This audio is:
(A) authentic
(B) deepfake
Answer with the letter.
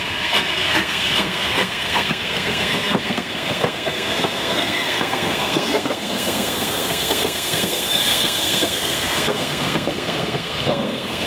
B